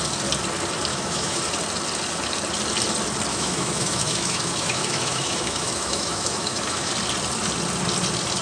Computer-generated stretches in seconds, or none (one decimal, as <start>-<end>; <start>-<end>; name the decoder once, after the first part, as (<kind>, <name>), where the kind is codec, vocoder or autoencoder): 0.9-1.4 (autoencoder, DAC-VAE); 3.3-6.9